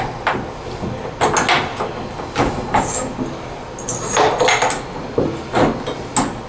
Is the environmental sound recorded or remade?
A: recorded